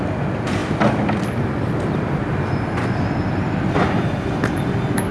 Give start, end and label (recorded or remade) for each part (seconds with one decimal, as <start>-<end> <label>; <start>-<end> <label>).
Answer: 0.0-5.1 remade

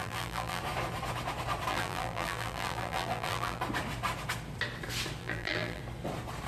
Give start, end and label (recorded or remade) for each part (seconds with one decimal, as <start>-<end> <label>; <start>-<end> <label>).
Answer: 0.0-0.6 remade; 0.6-1.7 recorded; 1.7-3.6 remade; 3.6-5.2 recorded; 5.2-5.8 remade; 5.8-6.5 recorded

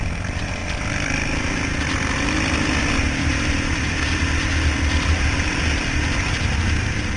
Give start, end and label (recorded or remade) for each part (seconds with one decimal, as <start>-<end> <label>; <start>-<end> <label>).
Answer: 0.0-3.2 recorded; 3.2-3.9 remade; 3.9-7.2 recorded

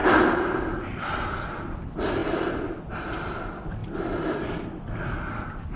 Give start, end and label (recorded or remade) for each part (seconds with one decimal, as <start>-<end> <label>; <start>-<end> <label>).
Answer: 0.0-5.8 recorded

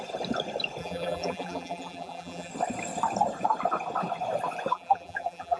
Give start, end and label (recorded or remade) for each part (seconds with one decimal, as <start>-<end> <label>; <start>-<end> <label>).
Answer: 0.0-0.8 recorded; 0.8-2.5 remade; 2.5-4.7 recorded; 4.7-5.6 remade

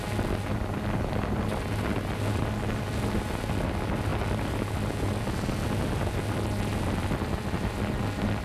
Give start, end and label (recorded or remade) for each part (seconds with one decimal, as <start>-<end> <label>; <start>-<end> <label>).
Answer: 0.0-8.4 recorded